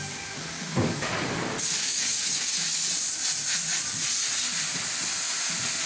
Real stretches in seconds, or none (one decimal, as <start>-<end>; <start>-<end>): 1.1-1.8; 2.5-5.9

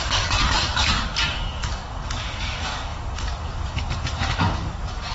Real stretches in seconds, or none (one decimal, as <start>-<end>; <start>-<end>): none